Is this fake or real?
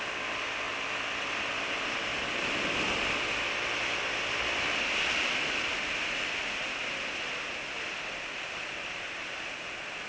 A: real